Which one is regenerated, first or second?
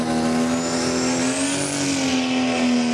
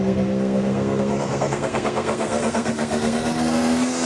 second